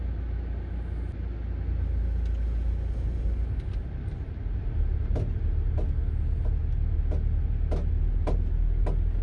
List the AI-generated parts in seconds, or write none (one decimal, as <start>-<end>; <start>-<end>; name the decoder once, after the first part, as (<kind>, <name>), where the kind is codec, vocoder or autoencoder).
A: none